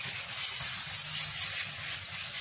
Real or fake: real